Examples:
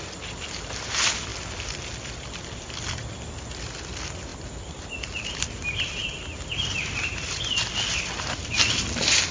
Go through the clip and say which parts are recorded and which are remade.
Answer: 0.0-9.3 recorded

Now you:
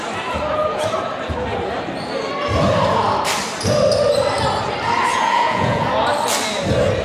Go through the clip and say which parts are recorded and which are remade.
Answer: 0.0-5.1 recorded; 5.1-5.9 remade; 5.9-7.0 recorded